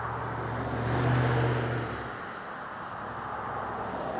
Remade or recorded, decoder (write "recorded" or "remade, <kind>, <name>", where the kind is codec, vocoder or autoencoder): recorded